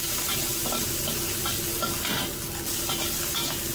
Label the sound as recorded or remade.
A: recorded